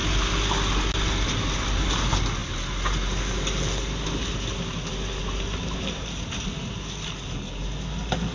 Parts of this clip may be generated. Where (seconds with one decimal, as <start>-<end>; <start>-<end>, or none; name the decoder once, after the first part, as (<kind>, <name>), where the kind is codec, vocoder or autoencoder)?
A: none